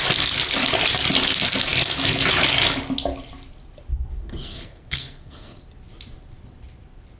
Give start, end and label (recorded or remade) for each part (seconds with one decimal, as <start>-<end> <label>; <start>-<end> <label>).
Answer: 0.0-4.2 recorded; 4.2-5.6 remade; 5.6-7.2 recorded